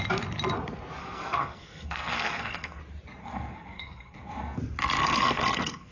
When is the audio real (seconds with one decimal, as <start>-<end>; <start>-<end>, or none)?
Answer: 0.0-1.0; 2.8-3.2; 4.6-5.0